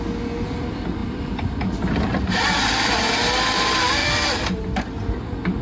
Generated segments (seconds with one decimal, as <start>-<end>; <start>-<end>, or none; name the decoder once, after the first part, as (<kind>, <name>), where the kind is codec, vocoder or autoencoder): 1.0-3.0 (vocoder, BigVGAN v2); 4.0-4.5